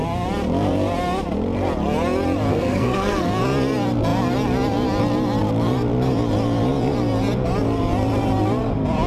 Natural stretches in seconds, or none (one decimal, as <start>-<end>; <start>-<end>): 0.0-2.5; 3.3-9.1